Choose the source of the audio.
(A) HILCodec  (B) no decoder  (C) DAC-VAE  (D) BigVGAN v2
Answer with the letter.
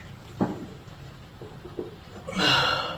B